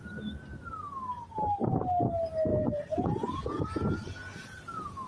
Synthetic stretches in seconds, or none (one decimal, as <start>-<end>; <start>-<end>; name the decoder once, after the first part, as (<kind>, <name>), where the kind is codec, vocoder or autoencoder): 2.5-5.1 (vocoder, Vocos)